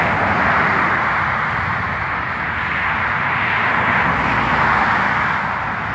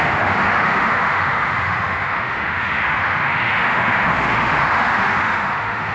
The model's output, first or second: second